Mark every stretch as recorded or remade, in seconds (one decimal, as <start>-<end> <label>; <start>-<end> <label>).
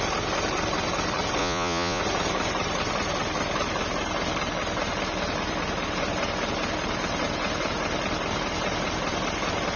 0.0-1.4 recorded; 1.4-2.0 remade; 2.0-9.8 recorded